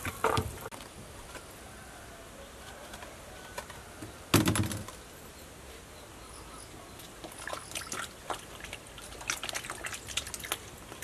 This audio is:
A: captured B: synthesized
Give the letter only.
A